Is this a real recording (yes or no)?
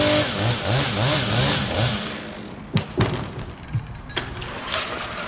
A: yes